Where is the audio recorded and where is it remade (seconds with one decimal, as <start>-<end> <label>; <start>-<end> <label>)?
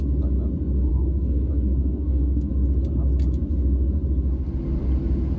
0.0-0.9 recorded; 0.9-2.5 remade; 2.5-5.4 recorded